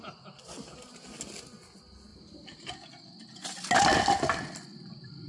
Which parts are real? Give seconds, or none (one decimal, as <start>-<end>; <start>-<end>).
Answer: 0.0-5.3